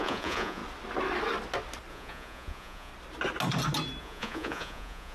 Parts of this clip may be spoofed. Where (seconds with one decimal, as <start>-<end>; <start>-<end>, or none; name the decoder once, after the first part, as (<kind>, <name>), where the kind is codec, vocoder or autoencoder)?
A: 0.0-0.6 (vocoder, Vocos); 1.9-2.9; 4.0-5.1